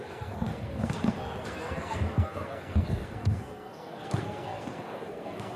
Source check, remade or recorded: remade